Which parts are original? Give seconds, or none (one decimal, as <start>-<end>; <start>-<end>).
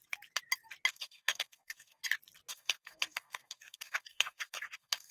0.0-0.9; 2.0-2.5